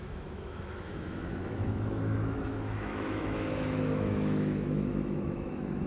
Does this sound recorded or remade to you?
remade